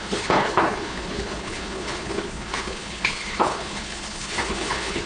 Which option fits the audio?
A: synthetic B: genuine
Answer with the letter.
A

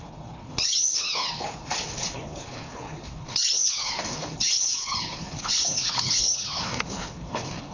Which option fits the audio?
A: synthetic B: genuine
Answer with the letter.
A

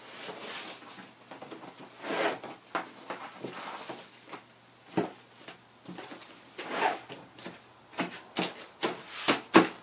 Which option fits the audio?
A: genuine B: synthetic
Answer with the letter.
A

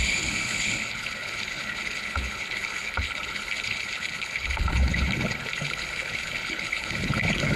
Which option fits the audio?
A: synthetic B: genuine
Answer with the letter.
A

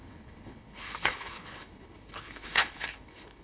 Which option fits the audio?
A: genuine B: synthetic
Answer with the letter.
B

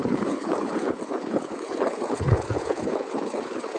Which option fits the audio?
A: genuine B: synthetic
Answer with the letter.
B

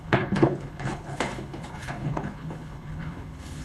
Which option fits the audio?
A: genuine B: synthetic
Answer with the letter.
B